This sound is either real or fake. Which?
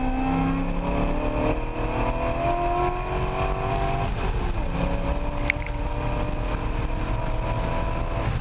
real